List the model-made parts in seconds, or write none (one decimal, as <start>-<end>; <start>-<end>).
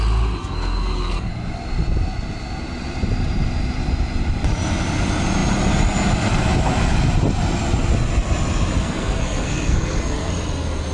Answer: 0.4-1.3; 8.8-10.3